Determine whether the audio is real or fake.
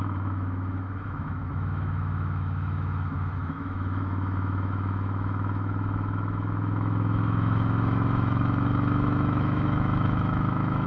fake